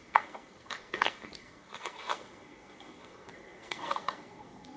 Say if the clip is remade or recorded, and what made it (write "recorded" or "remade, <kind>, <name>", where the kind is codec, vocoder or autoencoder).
remade, codec, SNAC